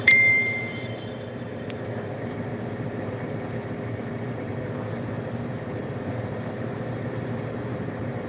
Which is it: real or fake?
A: fake